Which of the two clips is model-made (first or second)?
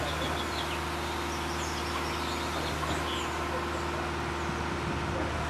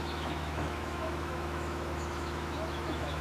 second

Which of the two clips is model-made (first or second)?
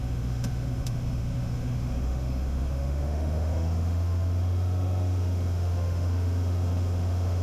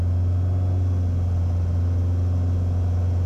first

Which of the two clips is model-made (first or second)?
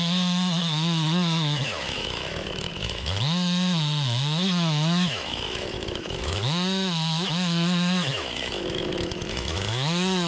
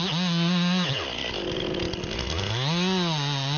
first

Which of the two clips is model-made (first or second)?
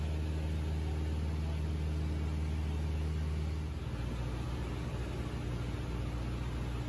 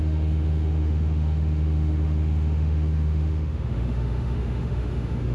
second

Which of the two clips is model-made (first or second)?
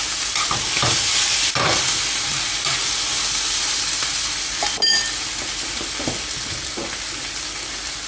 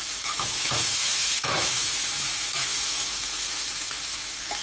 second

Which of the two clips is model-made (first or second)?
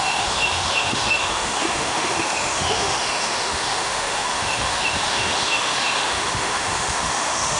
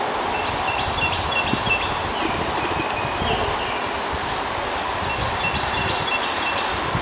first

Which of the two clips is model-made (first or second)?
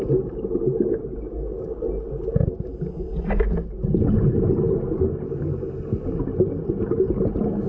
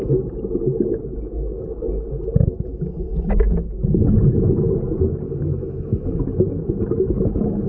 second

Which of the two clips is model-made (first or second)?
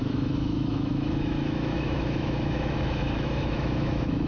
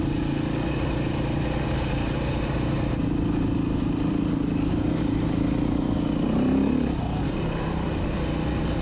first